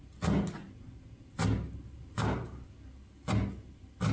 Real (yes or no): yes